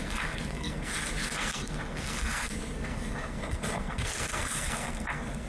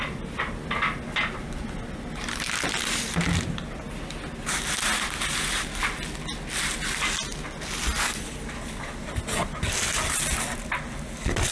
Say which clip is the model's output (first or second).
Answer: first